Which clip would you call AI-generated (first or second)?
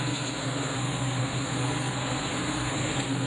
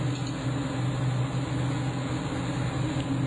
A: first